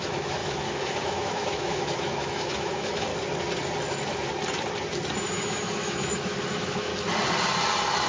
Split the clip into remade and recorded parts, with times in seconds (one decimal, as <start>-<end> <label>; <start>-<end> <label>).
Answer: 0.0-3.1 remade; 3.1-5.3 recorded; 5.3-6.9 remade; 6.9-8.1 recorded